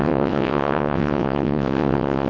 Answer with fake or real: fake